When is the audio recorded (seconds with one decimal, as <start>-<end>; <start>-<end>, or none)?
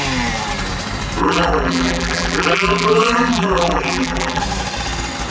0.0-1.2; 4.4-5.3